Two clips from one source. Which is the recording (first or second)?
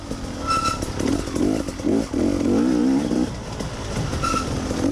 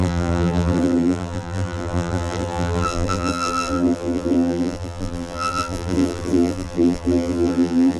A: first